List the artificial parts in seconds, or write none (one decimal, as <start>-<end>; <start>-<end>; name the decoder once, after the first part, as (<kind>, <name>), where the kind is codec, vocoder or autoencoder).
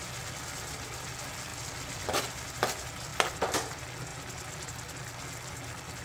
1.5-2.2 (vocoder, BigVGAN v2); 3.1-3.6